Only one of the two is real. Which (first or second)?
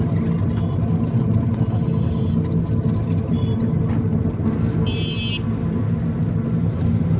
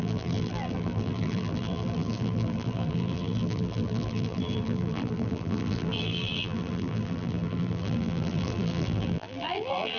first